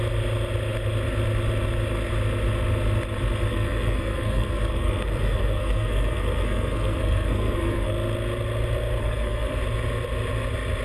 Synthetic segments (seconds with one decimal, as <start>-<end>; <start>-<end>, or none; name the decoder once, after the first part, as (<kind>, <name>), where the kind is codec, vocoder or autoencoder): 3.5-7.9 (codec, SNAC); 9.0-9.6